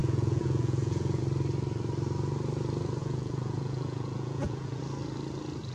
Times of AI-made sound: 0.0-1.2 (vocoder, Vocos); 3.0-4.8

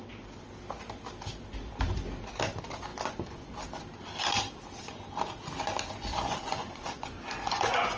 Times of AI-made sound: 2.9-3.6 (vocoder, Vocos); 6.1-8.0

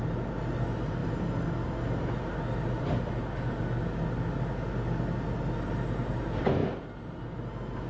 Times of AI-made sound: none

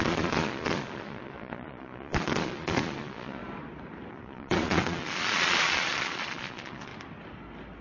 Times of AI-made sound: 0.0-3.4 (vocoder, Vocos); 4.1-6.9

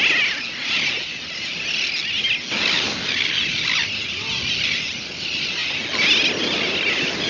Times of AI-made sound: none

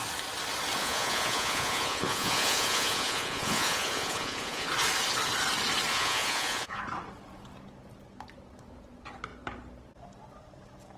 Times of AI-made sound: 0.8-4.7 (vocoder, Vocos); 5.9-6.8

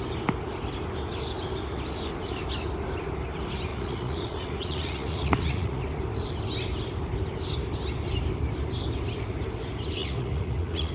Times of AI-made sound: 3.7-5.8 (vocoder, Vocos); 10.0-10.9